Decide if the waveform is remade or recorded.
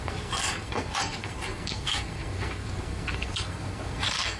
remade